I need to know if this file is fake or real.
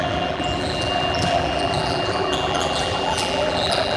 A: fake